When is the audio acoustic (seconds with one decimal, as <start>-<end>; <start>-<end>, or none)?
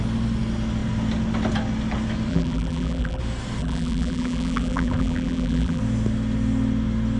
0.0-2.3; 3.2-3.6; 5.8-7.2